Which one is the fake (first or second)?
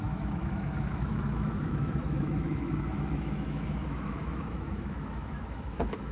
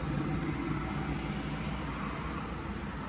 first